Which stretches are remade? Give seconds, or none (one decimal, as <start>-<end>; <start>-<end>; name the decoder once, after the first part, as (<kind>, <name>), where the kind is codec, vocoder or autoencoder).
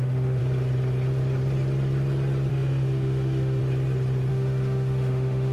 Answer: 0.0-0.4 (autoencoder, DAC-VAE); 2.5-3.6; 4.3-5.5